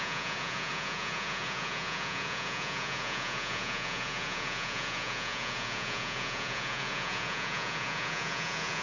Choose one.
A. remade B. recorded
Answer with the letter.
A